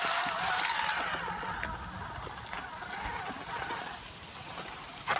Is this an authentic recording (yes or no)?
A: yes